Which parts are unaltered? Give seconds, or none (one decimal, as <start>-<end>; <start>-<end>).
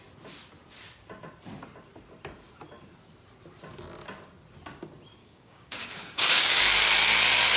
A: 0.0-5.2; 6.6-7.6